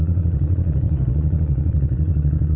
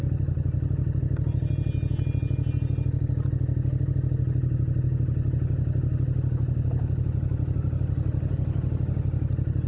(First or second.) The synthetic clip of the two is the first